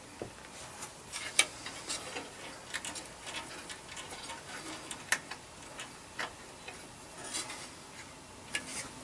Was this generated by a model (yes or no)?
no